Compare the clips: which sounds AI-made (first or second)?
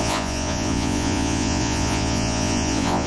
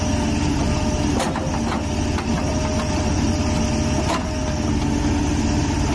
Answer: first